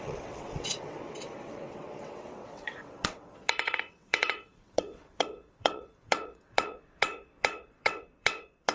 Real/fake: fake